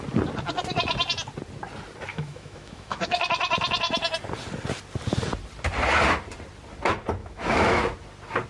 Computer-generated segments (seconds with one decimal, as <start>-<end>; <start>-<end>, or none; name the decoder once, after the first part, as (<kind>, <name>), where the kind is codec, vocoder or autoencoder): 2.1-3.2 (autoencoder, DAC-VAE); 7.2-7.8